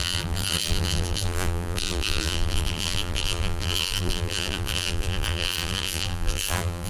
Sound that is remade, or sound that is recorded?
remade